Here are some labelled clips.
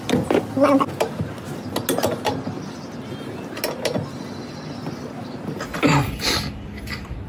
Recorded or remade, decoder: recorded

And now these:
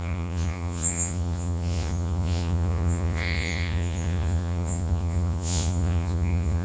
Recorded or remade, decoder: remade, vocoder, Vocos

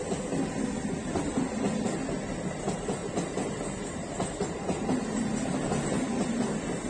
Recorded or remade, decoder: recorded